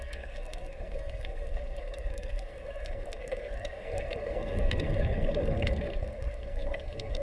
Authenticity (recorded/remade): remade